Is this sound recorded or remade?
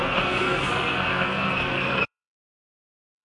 remade